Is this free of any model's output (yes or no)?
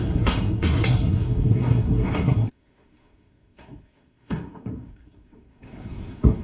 no